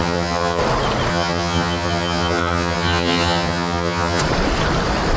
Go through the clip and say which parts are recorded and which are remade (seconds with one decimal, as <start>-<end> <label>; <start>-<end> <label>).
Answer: 0.0-0.6 remade; 0.6-1.1 recorded; 1.1-4.2 remade; 4.2-5.2 recorded